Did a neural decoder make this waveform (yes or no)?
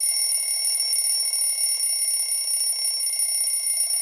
no